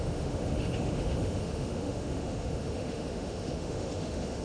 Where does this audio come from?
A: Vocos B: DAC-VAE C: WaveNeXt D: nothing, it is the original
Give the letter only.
B